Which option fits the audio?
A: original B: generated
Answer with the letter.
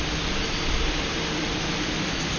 A